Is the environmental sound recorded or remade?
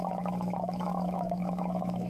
remade